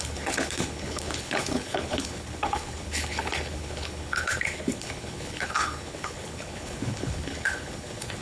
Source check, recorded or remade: remade